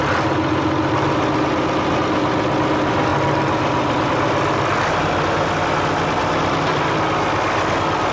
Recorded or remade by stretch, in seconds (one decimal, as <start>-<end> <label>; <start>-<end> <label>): 0.0-8.1 recorded